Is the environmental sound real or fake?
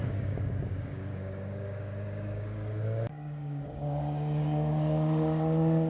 fake